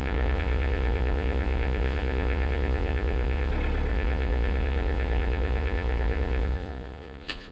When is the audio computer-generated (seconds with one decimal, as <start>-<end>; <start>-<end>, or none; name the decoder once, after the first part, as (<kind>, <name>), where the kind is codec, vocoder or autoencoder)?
0.0-3.5 (vocoder, Vocos); 3.9-7.5